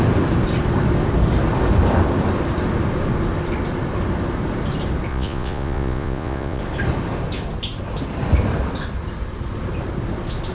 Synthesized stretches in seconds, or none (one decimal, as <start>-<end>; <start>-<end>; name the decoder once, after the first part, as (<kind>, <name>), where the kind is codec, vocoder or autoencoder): 5.1-6.6 (vocoder, Vocos)